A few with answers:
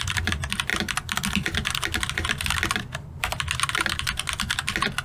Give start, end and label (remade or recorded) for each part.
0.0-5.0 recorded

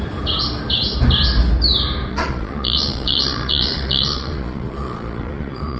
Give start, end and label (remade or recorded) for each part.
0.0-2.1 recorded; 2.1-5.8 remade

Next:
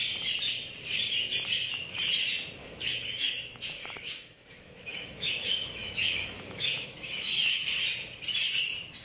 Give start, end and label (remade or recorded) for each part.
0.0-2.6 recorded; 2.6-3.4 remade; 3.4-3.8 recorded; 3.8-7.7 remade; 7.7-9.0 recorded

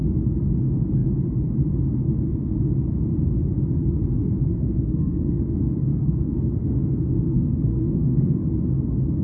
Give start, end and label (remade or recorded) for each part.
0.0-4.1 recorded; 4.1-5.4 remade; 5.4-5.9 recorded; 5.9-8.4 remade; 8.4-9.2 recorded

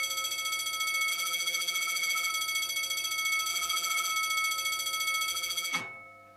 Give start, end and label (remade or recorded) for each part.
0.0-1.1 recorded; 1.1-2.3 remade; 2.3-3.5 recorded; 3.5-4.1 remade; 4.1-5.3 recorded; 5.3-5.8 remade; 5.8-6.4 recorded